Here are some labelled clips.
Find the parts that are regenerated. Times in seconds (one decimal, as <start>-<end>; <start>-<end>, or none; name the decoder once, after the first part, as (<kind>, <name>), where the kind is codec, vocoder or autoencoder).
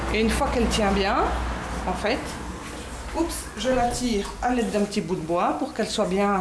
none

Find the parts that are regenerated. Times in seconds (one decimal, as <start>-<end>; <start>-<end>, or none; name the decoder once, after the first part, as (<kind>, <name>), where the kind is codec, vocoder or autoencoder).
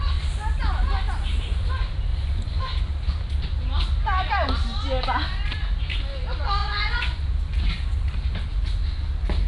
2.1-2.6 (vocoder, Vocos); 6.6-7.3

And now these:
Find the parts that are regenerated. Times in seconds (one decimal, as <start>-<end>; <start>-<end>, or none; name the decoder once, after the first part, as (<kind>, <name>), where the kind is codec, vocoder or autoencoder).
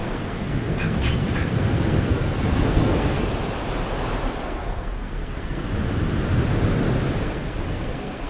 0.0-3.3 (codec, SNAC); 4.4-5.7; 7.2-8.3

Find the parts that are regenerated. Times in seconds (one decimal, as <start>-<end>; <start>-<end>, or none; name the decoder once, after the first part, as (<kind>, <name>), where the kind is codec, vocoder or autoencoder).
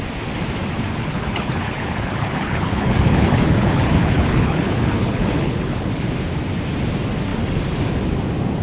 0.9-6.1 (codec, HILCodec)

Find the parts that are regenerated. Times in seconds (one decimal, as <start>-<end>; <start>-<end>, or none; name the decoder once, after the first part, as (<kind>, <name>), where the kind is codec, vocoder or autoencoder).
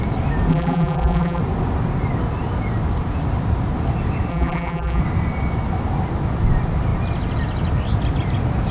0.5-1.4 (vocoder, BigVGAN v2); 4.3-5.0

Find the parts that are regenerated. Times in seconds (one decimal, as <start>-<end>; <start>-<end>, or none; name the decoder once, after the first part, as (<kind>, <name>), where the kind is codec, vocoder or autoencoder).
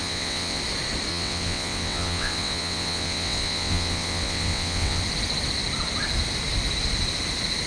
0.0-0.6 (vocoder, WaveNeXt); 1.1-5.0